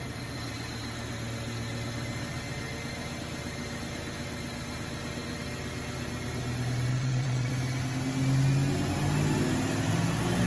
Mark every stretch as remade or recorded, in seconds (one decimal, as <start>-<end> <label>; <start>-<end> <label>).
0.0-6.9 recorded; 6.9-7.5 remade; 7.5-10.5 recorded